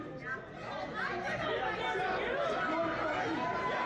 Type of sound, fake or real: real